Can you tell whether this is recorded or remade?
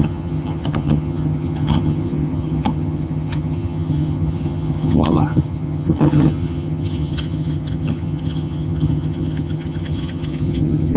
remade